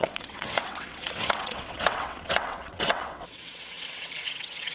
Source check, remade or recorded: remade